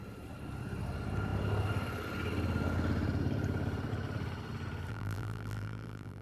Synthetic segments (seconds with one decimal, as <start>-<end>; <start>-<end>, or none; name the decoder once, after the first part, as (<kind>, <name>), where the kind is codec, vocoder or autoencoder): 4.9-6.2 (vocoder, BigVGAN v2)